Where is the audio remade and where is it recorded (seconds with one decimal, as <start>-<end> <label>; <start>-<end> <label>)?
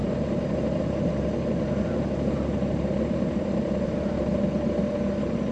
0.0-5.5 recorded